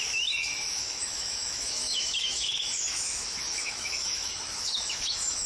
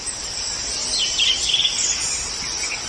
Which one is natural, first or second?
second